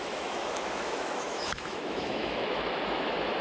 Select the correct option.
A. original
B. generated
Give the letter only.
B